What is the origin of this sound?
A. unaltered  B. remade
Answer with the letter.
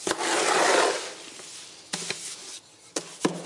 A